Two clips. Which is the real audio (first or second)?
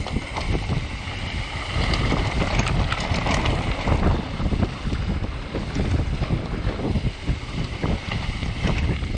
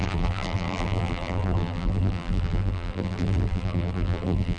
first